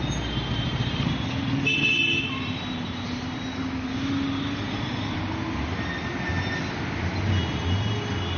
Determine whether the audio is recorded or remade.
recorded